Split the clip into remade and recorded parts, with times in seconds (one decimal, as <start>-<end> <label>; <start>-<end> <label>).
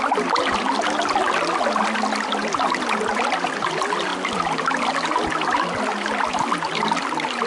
0.0-7.5 recorded